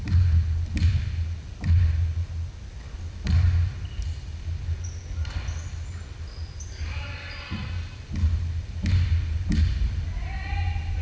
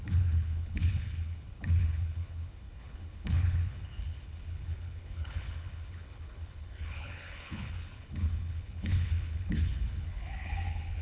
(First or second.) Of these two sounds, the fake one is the second